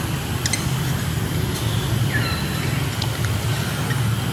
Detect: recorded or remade recorded